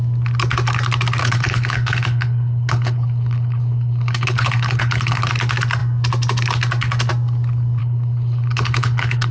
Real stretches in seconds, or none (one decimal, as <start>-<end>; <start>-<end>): 0.0-1.2; 5.3-7.8